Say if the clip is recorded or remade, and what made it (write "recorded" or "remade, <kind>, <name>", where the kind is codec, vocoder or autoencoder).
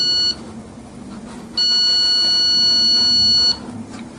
recorded